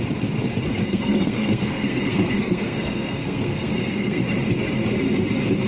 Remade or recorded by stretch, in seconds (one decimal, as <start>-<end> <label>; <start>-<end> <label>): 0.0-0.8 recorded; 0.8-4.2 remade; 4.2-5.7 recorded

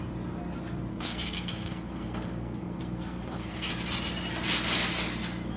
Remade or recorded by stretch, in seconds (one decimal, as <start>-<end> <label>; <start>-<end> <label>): 0.0-0.9 recorded; 0.9-3.7 remade; 3.7-5.6 recorded

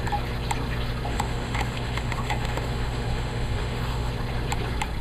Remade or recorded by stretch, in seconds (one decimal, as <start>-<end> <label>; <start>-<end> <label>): 0.0-1.1 recorded; 1.1-4.1 remade; 4.1-5.0 recorded

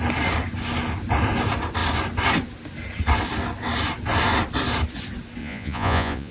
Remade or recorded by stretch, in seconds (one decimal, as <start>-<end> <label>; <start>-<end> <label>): 0.0-5.4 recorded; 5.4-6.3 remade

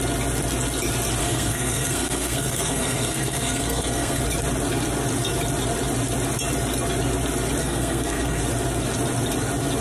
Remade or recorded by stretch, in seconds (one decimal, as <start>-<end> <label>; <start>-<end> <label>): 0.0-1.2 recorded; 1.2-4.2 remade; 4.2-7.6 recorded; 7.6-8.4 remade; 8.4-9.8 recorded

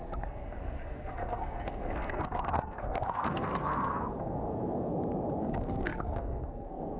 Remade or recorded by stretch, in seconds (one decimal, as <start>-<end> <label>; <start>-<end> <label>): 0.0-4.9 remade; 4.9-5.4 recorded; 5.4-7.0 remade

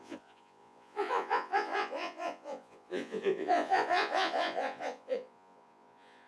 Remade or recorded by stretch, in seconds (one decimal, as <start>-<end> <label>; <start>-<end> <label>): 0.0-6.3 remade

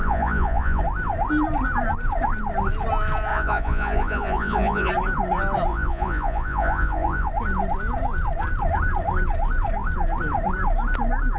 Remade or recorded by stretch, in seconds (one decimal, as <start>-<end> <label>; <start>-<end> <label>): 0.0-0.8 remade; 0.8-3.3 recorded; 3.3-4.9 remade; 4.9-5.7 recorded; 5.7-7.3 remade; 7.3-11.4 recorded